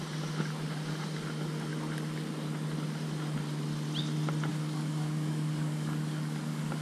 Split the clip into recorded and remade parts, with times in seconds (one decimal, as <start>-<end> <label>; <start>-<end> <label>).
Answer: 0.0-4.5 recorded; 4.5-6.8 remade